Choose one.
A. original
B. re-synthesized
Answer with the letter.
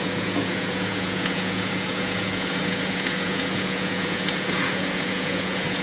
B